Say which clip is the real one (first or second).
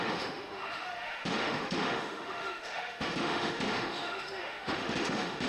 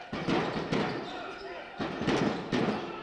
second